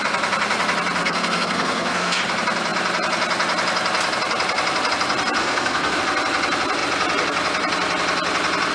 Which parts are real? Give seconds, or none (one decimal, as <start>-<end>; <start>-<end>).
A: 0.0-1.0; 2.2-5.4; 6.0-8.7